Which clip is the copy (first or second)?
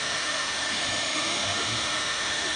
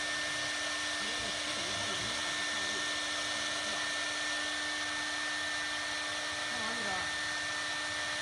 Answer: first